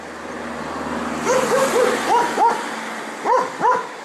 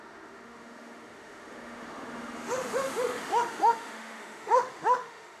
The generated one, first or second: second